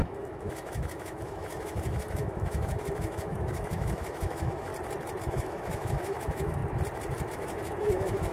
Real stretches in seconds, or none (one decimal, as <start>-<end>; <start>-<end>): 4.7-5.2; 6.6-7.3